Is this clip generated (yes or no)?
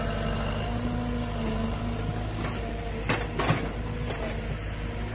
no